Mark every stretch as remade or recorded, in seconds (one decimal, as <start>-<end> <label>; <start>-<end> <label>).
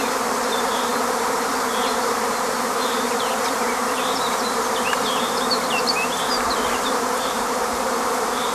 0.0-8.5 remade